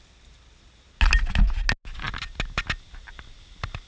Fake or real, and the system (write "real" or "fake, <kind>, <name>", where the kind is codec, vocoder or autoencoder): real